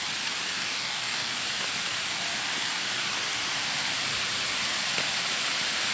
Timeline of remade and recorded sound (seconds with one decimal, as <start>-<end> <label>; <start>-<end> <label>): 0.0-0.6 recorded; 0.6-1.3 remade; 1.3-5.9 recorded